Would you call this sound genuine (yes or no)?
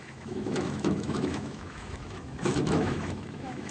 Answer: no